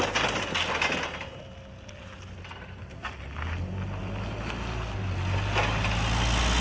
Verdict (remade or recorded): recorded